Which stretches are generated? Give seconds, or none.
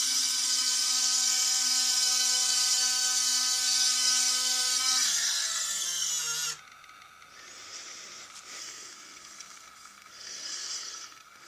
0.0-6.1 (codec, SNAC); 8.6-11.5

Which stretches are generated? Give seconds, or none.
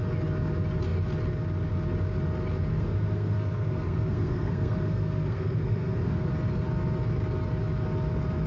2.7-6.3 (codec, SNAC)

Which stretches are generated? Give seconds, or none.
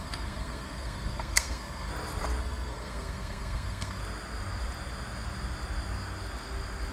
0.0-1.9 (codec, SNAC); 2.4-4.0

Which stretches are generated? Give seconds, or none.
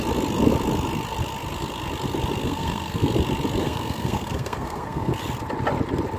2.4-3.1 (codec, SNAC); 3.6-5.1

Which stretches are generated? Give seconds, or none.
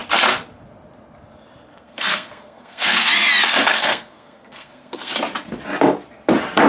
1.7-3.1 (codec, SNAC); 3.7-5.1